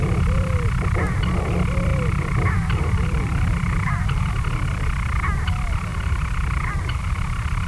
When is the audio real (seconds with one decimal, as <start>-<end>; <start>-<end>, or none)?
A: 0.0-1.9; 4.3-5.9; 7.0-7.7